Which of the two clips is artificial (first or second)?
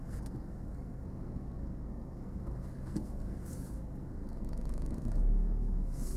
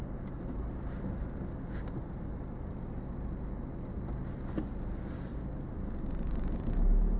first